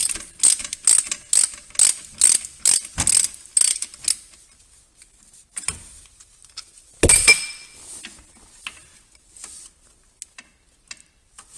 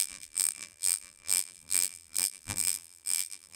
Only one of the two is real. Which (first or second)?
first